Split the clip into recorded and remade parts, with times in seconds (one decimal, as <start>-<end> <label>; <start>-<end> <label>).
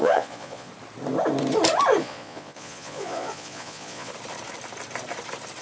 0.0-0.7 remade; 0.7-2.0 recorded; 2.0-4.1 remade; 4.1-5.6 recorded